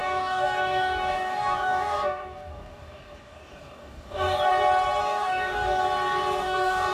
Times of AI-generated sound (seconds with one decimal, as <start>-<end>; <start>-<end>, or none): 0.0-4.5; 5.0-5.8; 6.4-6.9